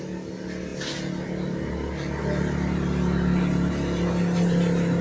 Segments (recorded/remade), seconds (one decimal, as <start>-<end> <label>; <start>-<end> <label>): 0.0-5.0 recorded

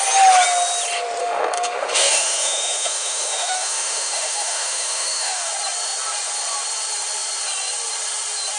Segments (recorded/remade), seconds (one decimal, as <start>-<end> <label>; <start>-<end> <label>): 0.0-1.2 recorded; 1.2-5.5 remade; 5.5-8.6 recorded

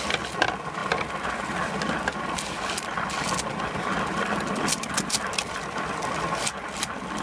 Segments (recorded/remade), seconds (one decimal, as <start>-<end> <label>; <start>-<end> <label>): 0.0-7.2 recorded

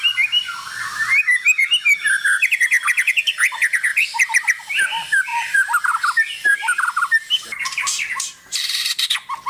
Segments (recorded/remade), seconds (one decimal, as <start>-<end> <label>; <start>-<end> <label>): 0.0-3.9 recorded; 3.9-4.7 remade; 4.7-5.3 recorded; 5.3-5.9 remade; 5.9-6.5 recorded; 6.5-9.1 remade; 9.1-9.5 recorded

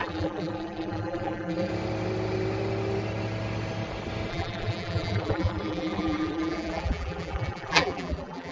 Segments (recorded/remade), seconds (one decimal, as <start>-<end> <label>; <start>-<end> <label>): 0.0-1.7 remade; 1.7-4.3 recorded; 4.3-8.5 remade

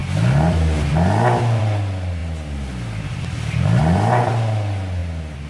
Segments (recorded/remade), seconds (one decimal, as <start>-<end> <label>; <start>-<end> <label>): 0.0-5.5 recorded

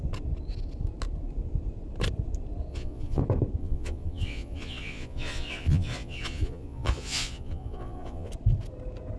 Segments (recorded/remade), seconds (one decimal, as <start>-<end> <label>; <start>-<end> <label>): 0.0-2.7 recorded; 2.7-3.2 remade; 3.2-3.6 recorded; 3.6-8.3 remade; 8.3-9.2 recorded

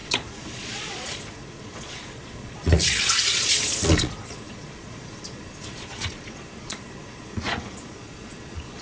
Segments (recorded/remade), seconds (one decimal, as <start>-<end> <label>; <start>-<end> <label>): 0.0-8.8 remade